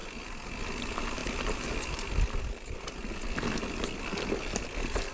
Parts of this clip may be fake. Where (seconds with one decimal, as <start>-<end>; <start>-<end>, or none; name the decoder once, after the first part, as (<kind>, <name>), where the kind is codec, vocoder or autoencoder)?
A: none